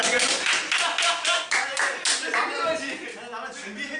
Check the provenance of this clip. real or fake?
real